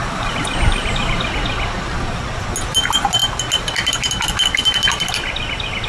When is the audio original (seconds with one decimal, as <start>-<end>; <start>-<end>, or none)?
1.1-5.9